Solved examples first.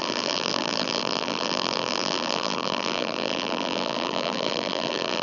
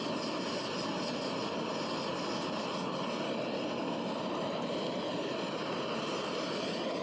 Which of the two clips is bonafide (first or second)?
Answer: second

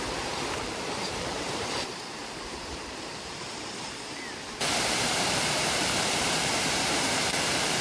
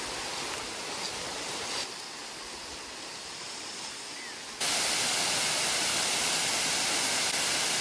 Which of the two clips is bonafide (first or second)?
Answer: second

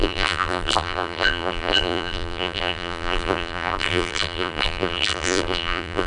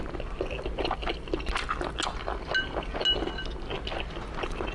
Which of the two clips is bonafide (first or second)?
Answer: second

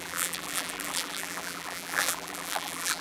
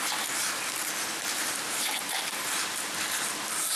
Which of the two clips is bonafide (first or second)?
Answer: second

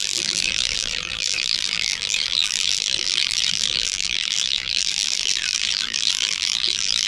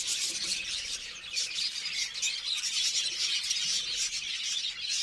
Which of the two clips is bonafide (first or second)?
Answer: second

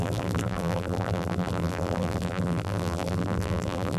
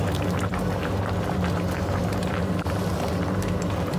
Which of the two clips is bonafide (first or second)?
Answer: second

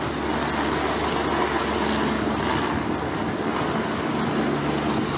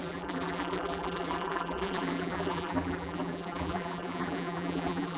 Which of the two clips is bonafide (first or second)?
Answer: first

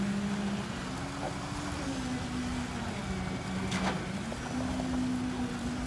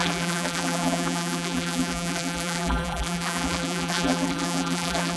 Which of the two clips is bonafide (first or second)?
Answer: first